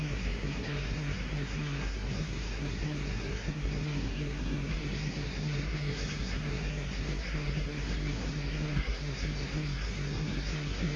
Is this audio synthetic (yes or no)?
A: yes